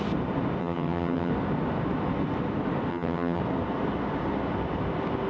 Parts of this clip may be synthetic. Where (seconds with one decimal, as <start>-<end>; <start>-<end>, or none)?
0.6-1.3; 2.9-3.4